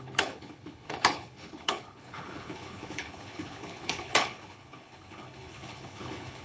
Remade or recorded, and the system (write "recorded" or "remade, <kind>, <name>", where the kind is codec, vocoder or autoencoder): remade, codec, HILCodec